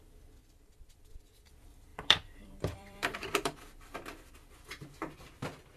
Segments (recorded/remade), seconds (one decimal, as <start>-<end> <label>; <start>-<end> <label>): 0.0-0.4 recorded; 0.4-1.5 remade; 1.5-1.9 recorded; 1.9-4.3 remade; 4.3-5.8 recorded